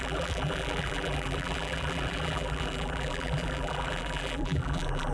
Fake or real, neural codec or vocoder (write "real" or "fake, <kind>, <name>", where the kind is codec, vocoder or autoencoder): fake, vocoder, BigVGAN v2